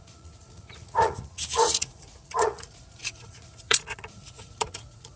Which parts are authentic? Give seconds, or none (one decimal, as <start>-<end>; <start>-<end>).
none